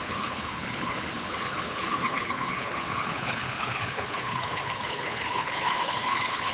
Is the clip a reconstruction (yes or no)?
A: yes